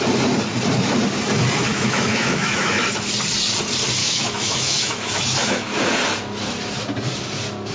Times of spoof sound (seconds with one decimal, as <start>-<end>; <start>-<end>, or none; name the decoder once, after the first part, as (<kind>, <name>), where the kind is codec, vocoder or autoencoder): 1.7-2.8 (autoencoder, DAC-VAE); 4.0-5.8